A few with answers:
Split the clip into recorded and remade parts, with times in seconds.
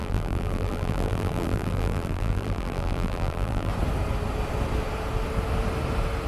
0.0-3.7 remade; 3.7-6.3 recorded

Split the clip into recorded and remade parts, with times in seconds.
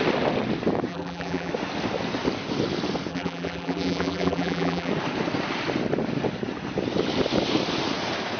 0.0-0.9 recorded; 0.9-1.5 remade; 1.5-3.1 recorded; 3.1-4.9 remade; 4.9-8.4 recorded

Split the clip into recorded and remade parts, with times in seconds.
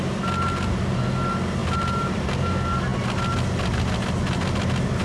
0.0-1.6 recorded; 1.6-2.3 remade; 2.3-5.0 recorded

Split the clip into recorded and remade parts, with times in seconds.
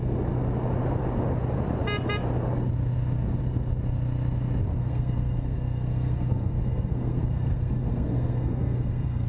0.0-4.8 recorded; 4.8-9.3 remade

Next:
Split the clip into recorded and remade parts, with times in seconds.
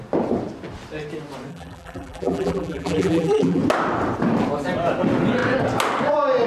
0.0-1.5 recorded; 1.5-3.6 remade; 3.6-6.5 recorded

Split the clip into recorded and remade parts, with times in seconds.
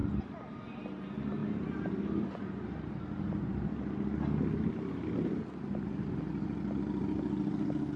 0.0-8.0 recorded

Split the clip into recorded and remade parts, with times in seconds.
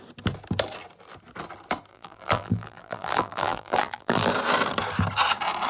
0.0-1.9 recorded; 1.9-4.3 remade; 4.3-5.7 recorded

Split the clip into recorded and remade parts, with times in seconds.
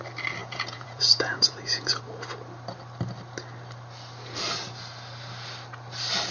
0.0-0.4 recorded; 0.4-2.0 remade; 2.0-6.3 recorded